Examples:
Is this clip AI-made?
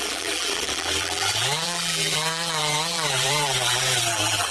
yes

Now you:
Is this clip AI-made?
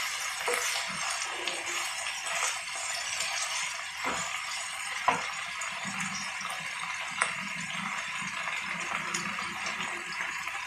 no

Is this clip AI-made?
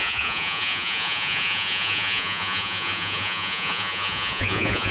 yes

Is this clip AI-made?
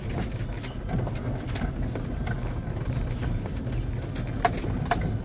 no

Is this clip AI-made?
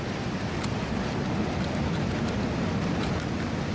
yes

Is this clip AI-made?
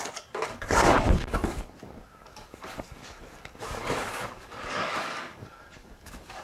yes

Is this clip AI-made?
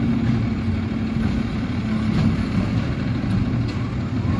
no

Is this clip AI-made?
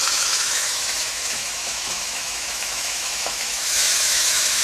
yes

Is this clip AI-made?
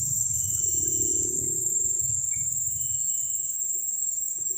yes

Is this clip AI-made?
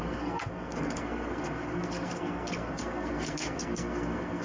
yes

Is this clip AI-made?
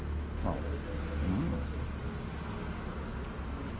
no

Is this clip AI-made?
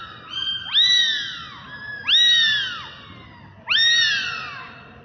no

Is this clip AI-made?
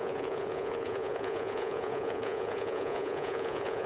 yes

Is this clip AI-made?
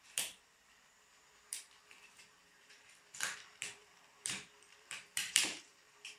yes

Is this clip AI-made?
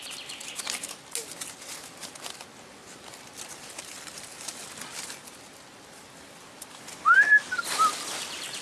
no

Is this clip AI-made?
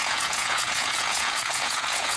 yes